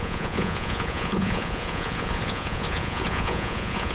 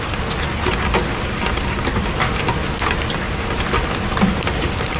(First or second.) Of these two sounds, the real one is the second